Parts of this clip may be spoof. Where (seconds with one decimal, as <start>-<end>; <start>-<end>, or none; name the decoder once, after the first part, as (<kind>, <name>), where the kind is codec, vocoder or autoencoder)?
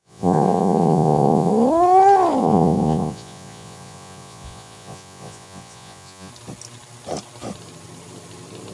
0.0-1.5 (vocoder, Vocos); 2.4-6.3